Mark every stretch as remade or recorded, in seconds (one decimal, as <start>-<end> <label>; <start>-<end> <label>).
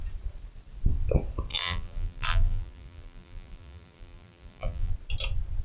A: 0.0-1.5 recorded; 1.5-4.9 remade; 4.9-5.6 recorded